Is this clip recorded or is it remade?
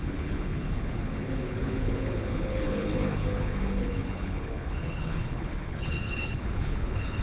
remade